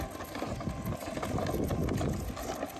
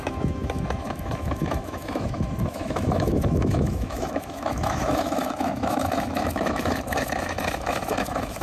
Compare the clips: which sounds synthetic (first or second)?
second